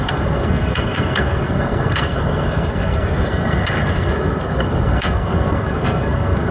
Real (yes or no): no